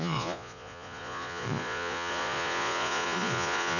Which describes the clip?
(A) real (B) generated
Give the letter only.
B